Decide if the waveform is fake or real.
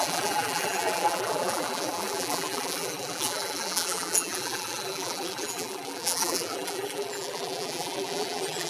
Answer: fake